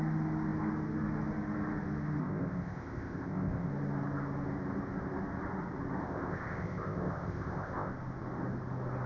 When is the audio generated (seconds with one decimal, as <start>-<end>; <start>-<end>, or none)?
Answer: 2.2-3.7; 6.0-7.9